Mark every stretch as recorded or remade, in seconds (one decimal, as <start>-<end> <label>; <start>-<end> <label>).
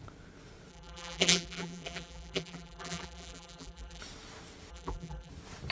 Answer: 0.0-0.7 recorded; 0.7-4.0 remade; 4.0-4.7 recorded; 4.7-5.3 remade; 5.3-5.7 recorded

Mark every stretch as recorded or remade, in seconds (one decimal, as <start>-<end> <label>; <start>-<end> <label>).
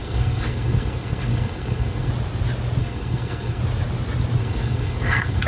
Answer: 0.0-2.1 remade; 2.1-2.8 recorded; 2.8-3.6 remade; 3.6-4.4 recorded; 4.4-5.5 remade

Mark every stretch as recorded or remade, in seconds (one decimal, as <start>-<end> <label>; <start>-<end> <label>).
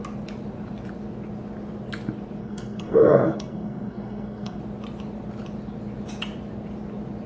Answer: 0.0-2.4 recorded; 2.4-4.6 remade; 4.6-7.3 recorded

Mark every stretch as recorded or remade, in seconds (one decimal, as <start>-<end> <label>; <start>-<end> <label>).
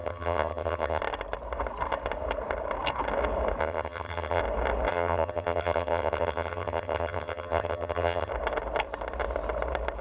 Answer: 0.0-1.0 remade; 1.0-3.6 recorded; 3.6-4.4 remade; 4.4-4.9 recorded; 4.9-8.3 remade; 8.3-10.0 recorded